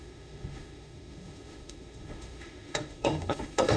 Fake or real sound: fake